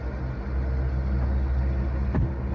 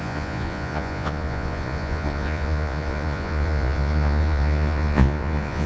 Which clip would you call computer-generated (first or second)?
second